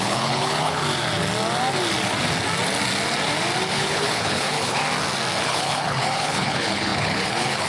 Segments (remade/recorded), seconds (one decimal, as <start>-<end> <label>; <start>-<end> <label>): 0.0-0.8 remade; 0.8-3.7 recorded; 3.7-4.8 remade; 4.8-5.4 recorded; 5.4-7.7 remade